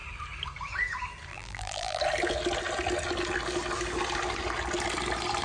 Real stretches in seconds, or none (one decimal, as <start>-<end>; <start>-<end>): 0.0-1.3; 2.0-5.4